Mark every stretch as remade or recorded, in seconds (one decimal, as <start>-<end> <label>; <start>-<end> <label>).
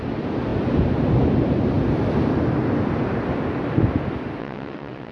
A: 0.0-4.4 recorded; 4.4-5.1 remade